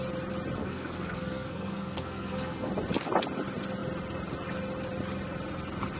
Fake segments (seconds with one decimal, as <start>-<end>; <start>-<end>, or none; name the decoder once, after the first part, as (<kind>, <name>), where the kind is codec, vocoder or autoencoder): 0.6-2.7 (codec, SNAC)